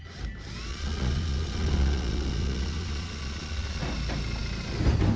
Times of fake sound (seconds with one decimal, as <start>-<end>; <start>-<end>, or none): 0.7-3.8